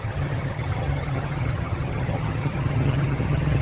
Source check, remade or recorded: remade